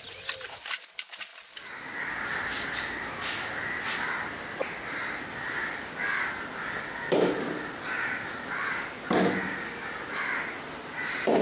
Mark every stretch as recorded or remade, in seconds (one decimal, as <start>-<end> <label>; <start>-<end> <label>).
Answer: 0.0-11.4 recorded